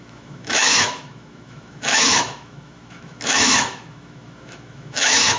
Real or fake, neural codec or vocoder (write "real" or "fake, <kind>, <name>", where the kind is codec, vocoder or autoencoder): fake, autoencoder, DAC-VAE